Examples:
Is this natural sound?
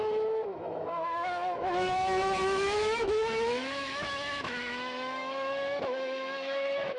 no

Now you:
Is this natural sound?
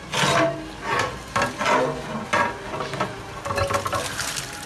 yes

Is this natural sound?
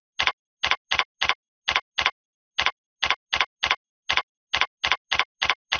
yes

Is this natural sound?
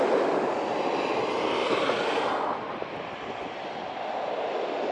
yes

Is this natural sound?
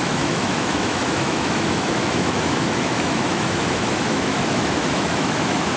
no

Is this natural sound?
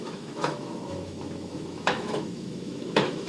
no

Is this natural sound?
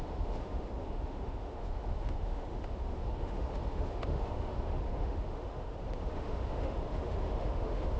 no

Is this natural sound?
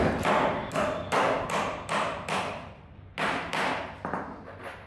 yes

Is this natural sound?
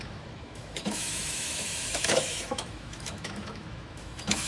no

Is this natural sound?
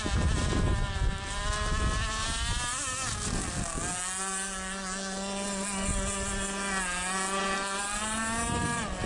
yes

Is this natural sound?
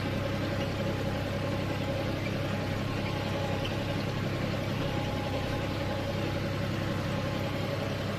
yes